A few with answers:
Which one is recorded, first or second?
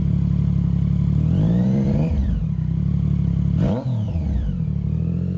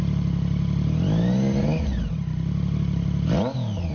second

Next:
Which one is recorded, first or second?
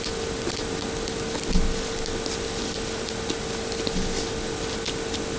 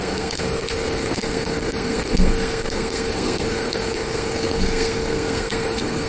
first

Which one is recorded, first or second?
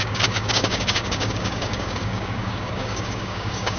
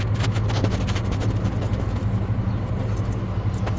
second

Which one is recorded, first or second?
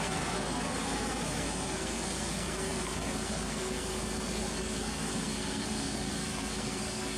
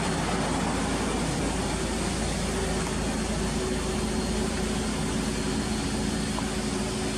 second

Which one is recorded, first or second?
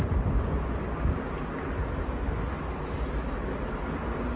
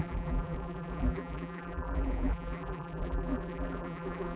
first